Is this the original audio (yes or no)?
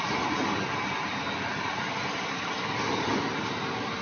yes